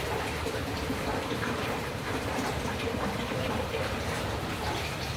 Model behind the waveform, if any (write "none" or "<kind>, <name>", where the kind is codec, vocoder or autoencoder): vocoder, BigVGAN v2